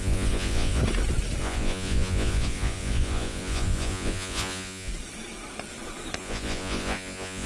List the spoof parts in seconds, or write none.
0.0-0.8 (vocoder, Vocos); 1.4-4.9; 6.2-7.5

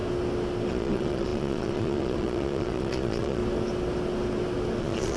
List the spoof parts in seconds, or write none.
0.7-3.4 (vocoder, Vocos); 4.8-5.2

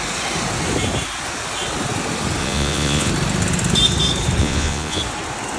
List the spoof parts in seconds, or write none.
2.4-3.1 (vocoder, Vocos); 4.4-5.0

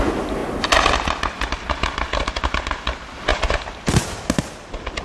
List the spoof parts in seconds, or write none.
3.3-4.0 (vocoder, BigVGAN v2)

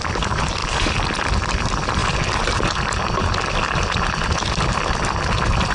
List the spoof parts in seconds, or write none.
0.0-0.6 (vocoder, BigVGAN v2); 1.3-2.0